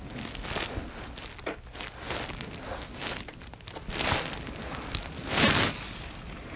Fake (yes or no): no